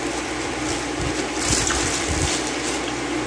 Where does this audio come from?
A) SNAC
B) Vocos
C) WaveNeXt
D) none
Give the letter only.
D